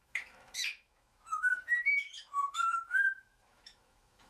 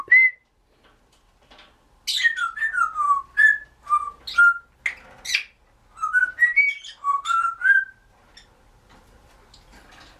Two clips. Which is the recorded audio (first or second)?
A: second